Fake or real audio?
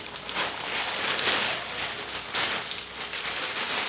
real